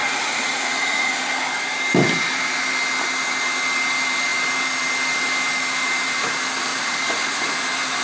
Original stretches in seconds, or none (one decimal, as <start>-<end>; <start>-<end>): 1.1-6.7; 7.5-8.0